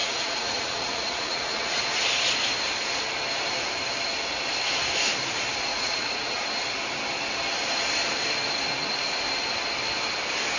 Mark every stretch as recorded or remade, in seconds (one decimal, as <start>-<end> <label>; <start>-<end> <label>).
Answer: 0.0-1.8 remade; 1.8-5.7 recorded; 5.7-6.4 remade; 6.4-10.6 recorded